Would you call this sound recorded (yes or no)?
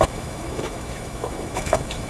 no